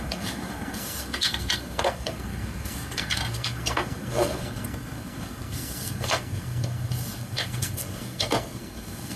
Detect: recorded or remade remade